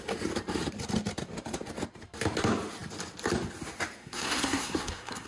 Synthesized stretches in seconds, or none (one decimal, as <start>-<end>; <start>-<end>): 4.0-5.3